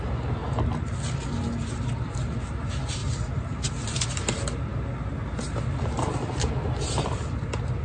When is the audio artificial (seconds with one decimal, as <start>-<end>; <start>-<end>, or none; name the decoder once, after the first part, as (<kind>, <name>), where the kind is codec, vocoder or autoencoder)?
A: 1.6-2.4 (vocoder, BigVGAN v2); 3.0-3.7